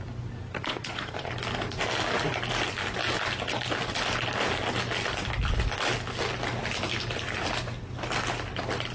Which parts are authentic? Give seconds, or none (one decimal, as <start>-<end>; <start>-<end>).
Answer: 0.0-0.7; 1.3-8.9